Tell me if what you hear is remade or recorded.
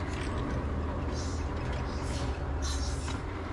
remade